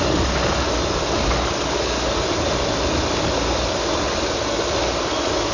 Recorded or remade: recorded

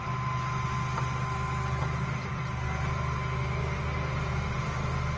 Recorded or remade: recorded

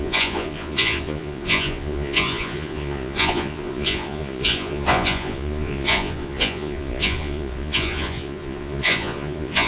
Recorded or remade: remade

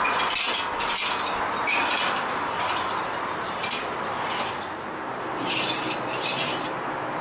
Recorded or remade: recorded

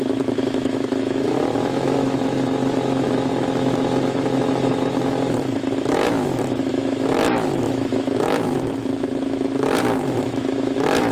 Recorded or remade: remade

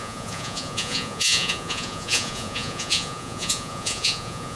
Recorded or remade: remade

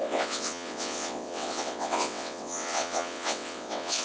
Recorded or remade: remade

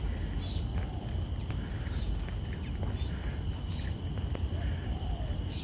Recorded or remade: recorded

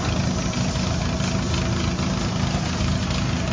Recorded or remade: recorded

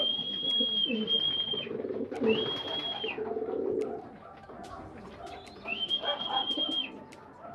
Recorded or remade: recorded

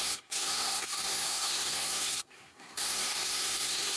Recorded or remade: remade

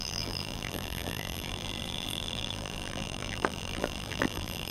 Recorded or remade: remade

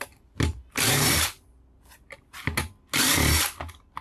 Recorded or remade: recorded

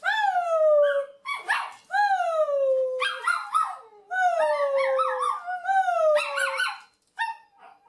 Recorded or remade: recorded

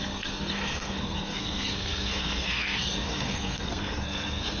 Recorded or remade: remade